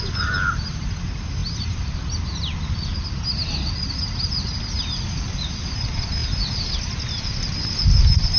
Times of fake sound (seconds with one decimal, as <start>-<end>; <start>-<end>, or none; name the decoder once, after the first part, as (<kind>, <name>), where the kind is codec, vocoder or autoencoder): none